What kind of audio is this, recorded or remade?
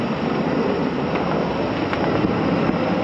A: recorded